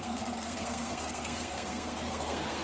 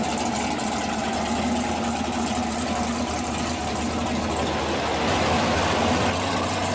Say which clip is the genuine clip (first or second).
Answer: second